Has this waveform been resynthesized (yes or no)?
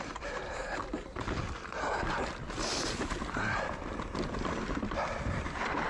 no